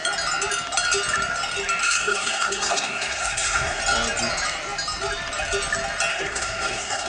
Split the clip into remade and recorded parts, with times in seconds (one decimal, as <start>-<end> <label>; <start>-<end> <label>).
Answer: 0.0-1.8 recorded; 1.8-3.8 remade; 3.8-6.1 recorded; 6.1-7.1 remade